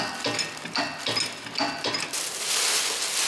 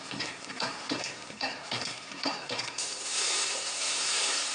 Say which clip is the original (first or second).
first